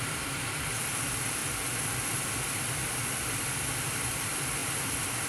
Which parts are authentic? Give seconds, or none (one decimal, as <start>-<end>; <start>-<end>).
1.4-3.9; 4.6-5.3